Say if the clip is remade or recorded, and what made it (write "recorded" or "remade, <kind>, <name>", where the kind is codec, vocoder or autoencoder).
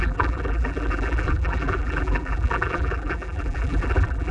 remade, vocoder, BigVGAN v2